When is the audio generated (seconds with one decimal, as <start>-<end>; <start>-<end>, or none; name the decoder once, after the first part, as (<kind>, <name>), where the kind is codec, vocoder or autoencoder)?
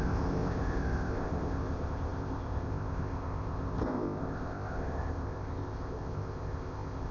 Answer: 0.0-7.1 (codec, ZipCodec)